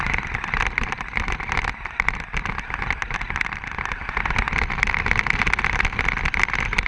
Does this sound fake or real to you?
real